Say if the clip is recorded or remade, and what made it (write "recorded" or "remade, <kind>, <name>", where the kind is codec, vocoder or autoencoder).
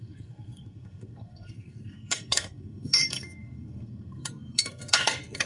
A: remade, codec, SNAC